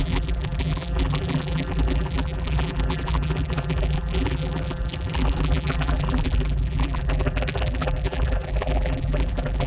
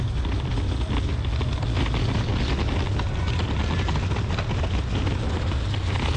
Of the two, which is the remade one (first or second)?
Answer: first